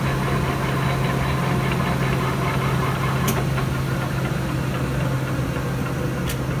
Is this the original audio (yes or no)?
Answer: yes